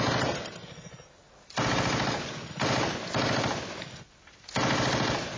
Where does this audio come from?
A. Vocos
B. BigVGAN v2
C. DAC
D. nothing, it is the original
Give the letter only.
D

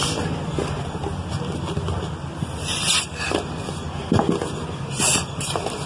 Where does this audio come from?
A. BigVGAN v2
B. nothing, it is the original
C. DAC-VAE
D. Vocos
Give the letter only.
B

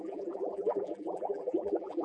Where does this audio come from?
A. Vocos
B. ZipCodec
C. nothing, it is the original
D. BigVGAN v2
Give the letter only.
D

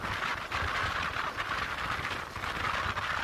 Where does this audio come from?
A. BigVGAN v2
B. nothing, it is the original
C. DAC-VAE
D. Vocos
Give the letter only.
B